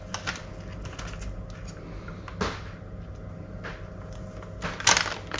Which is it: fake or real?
real